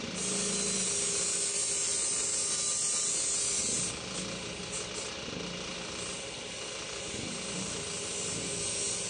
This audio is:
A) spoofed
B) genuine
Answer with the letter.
B